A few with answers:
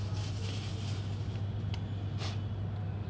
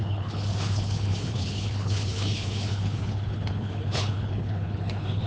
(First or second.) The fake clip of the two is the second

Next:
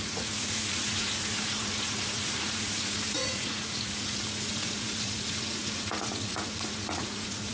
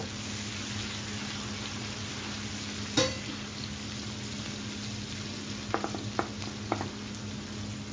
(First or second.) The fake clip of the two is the first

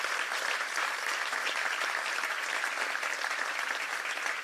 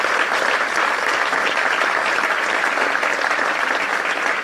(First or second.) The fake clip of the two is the first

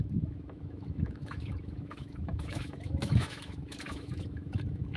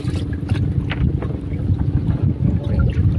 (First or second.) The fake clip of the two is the first